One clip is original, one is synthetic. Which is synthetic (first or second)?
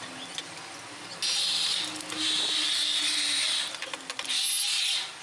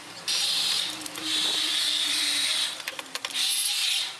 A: second